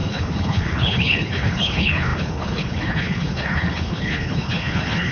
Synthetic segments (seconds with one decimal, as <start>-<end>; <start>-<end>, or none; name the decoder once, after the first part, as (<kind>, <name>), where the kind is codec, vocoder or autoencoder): 0.0-5.1 (codec, HILCodec)